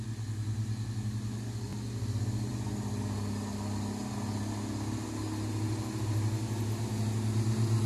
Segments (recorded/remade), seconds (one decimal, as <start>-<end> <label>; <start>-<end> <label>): 0.0-7.9 recorded